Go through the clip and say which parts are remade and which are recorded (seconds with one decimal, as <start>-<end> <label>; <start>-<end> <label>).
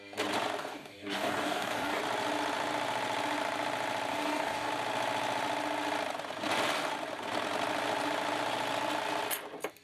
0.0-0.6 recorded; 0.6-2.0 remade; 2.0-4.1 recorded; 4.1-4.7 remade; 4.7-9.8 recorded